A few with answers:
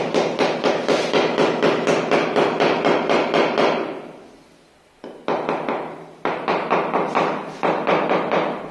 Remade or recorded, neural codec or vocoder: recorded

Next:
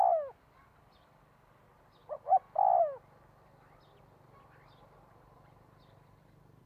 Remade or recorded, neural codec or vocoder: recorded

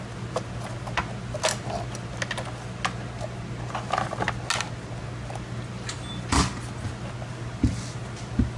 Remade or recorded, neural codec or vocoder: recorded